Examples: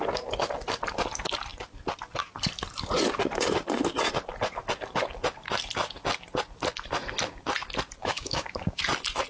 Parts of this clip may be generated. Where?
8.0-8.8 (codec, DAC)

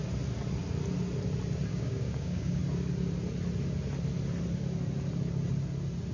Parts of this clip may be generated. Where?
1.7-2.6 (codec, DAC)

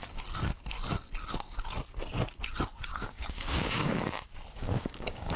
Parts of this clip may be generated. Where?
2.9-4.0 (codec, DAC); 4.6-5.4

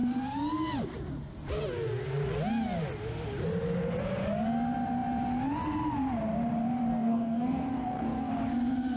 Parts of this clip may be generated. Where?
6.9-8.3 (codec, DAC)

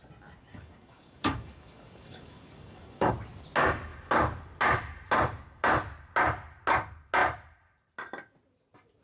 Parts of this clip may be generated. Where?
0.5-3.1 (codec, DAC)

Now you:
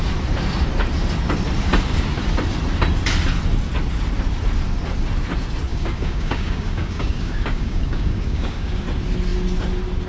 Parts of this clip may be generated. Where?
5.7-8.8 (codec, DAC)

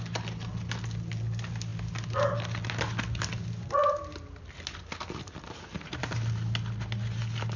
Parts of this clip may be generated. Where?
none